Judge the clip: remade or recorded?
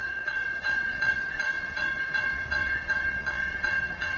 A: remade